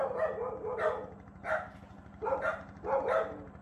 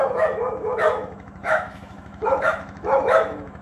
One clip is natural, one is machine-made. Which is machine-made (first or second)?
second